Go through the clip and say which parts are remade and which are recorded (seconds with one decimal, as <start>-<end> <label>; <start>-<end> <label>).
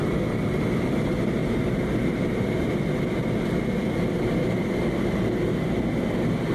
0.0-6.5 recorded